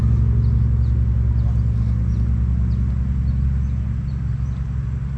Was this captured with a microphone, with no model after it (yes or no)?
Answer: yes